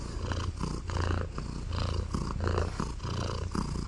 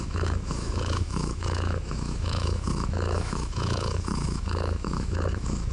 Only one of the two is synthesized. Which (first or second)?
second